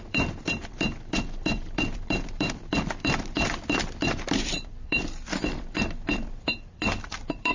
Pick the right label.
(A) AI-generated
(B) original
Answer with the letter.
A